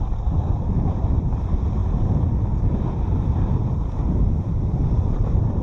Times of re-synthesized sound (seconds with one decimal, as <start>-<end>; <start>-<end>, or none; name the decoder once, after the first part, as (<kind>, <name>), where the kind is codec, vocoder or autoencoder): 0.0-5.6 (vocoder, BigVGAN v2)